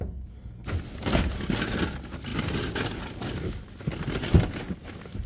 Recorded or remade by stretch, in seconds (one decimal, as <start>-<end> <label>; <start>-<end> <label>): 0.0-5.3 recorded